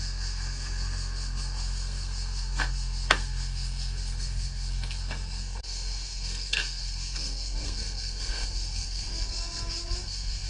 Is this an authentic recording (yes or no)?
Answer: no